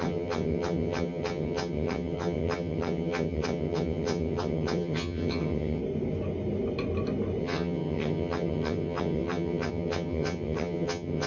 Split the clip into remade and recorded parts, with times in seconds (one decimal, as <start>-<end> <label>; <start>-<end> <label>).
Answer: 0.0-5.8 remade; 5.8-7.4 recorded; 7.4-11.3 remade